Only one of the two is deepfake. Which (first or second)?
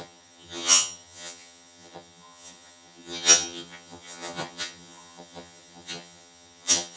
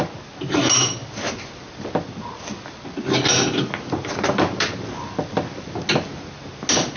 first